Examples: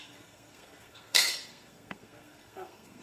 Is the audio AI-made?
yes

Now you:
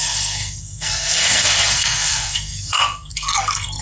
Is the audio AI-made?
yes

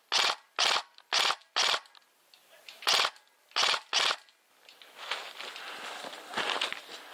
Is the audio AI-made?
no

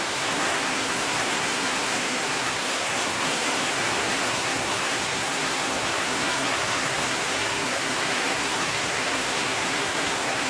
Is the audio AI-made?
yes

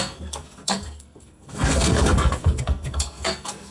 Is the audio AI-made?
yes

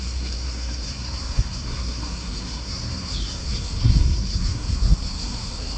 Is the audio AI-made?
yes